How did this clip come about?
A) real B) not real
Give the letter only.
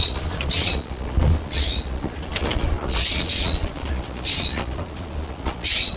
B